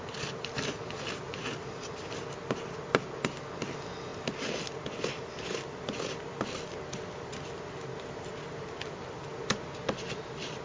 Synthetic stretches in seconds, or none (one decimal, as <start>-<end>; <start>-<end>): none